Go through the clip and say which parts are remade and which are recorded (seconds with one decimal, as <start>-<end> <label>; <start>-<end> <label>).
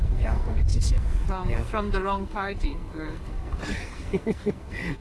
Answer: 0.0-5.0 remade